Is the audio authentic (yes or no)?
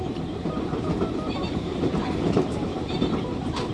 no